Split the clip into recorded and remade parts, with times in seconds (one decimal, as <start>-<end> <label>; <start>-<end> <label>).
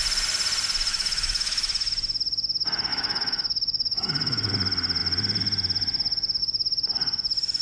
0.0-0.9 recorded; 0.9-1.9 remade; 1.9-2.9 recorded; 2.9-4.5 remade; 4.5-7.6 recorded